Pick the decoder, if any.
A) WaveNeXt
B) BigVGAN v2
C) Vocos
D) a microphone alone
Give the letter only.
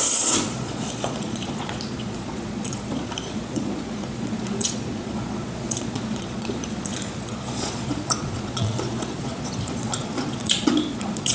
C